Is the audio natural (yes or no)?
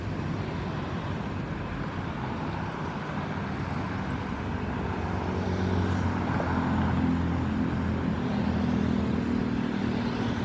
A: yes